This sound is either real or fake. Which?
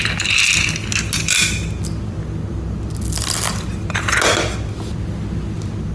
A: real